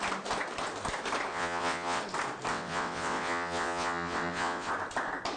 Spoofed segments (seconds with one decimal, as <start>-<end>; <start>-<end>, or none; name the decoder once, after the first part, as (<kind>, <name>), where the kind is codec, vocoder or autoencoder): 1.3-2.0 (vocoder, WaveNeXt); 2.5-4.7

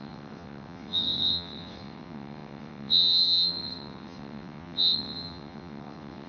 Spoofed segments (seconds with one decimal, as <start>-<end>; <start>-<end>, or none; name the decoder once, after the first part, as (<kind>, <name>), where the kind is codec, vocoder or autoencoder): 0.0-6.3 (vocoder, WaveNeXt)

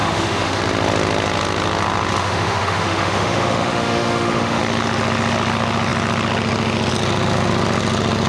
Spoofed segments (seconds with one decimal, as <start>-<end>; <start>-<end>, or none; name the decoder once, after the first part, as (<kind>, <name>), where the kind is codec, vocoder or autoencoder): 0.0-0.6 (autoencoder, DAC-VAE); 2.2-4.6

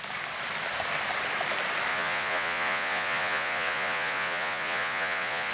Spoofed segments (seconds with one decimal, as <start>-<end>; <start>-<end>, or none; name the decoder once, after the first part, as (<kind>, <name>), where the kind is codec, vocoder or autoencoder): 1.9-5.5 (vocoder, Vocos)

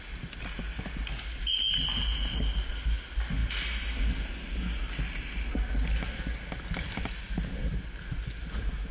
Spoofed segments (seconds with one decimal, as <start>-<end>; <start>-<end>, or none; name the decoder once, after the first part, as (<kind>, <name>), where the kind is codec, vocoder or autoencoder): none

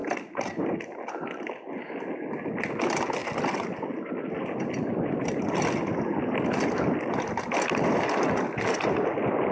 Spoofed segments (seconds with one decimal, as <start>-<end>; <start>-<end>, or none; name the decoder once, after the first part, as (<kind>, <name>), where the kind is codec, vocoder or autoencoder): 0.0-1.3 (vocoder, BigVGAN v2)

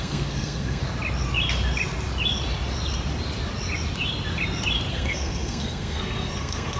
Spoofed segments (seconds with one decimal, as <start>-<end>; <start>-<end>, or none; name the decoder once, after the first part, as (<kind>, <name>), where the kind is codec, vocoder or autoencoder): 0.0-0.8 (codec, SNAC); 4.9-6.8